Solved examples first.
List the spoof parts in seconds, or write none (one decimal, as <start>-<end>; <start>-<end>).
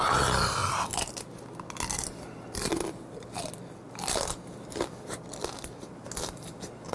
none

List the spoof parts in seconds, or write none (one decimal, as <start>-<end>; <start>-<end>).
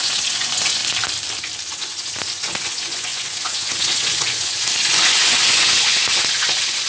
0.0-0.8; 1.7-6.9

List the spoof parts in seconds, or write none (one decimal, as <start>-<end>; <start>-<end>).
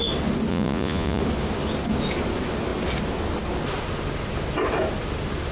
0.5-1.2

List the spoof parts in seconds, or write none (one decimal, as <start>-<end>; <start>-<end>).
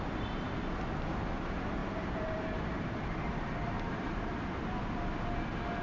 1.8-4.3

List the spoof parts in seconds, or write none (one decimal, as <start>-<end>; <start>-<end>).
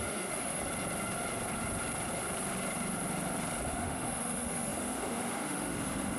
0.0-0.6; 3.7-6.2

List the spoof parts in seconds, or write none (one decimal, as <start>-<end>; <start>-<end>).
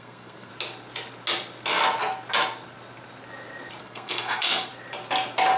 0.0-0.5; 3.8-4.7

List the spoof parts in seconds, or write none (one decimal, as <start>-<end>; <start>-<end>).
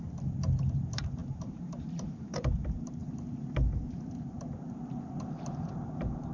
0.6-3.0; 5.3-6.3